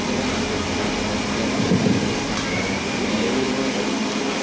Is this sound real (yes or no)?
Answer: yes